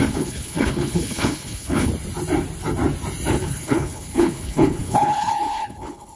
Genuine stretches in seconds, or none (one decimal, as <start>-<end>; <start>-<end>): 1.9-3.3